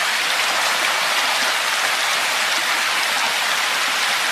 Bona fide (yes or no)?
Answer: yes